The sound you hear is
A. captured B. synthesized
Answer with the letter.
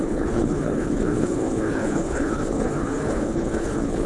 B